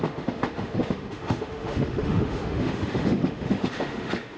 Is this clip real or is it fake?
fake